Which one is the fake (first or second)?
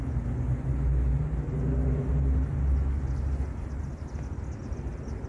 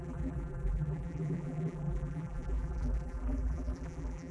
second